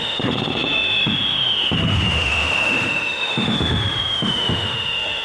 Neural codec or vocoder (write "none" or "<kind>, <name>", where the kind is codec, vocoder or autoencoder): autoencoder, DAC-VAE